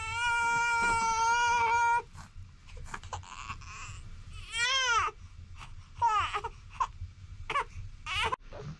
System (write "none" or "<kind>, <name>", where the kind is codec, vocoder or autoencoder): none